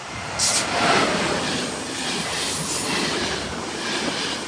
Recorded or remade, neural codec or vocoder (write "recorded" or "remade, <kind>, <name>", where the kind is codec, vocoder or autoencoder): recorded